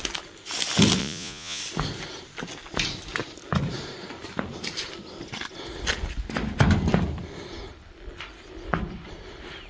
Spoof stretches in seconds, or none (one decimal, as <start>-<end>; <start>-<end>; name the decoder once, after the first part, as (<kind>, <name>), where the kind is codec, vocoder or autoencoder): 1.0-1.6 (vocoder, Vocos)